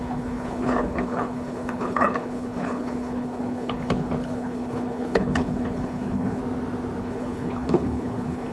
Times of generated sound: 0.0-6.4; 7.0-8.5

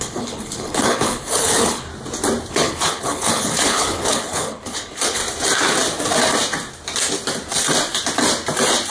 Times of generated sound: 0.0-1.9; 2.5-5.2

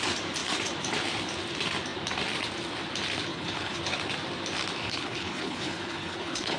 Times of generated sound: 3.3-3.8; 4.8-6.6